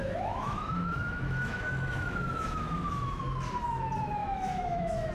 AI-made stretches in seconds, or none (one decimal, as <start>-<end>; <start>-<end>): 0.0-3.1; 4.2-5.1